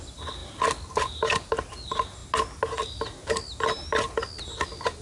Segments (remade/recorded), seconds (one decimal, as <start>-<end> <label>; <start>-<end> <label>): 0.0-5.0 recorded